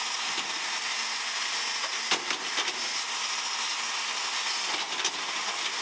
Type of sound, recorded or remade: recorded